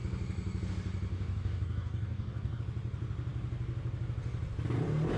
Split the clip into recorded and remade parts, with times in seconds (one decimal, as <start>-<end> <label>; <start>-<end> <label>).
0.0-1.1 recorded; 1.1-2.6 remade; 2.6-5.2 recorded